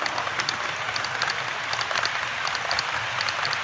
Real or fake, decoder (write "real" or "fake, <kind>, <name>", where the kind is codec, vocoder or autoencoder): fake, vocoder, BigVGAN v2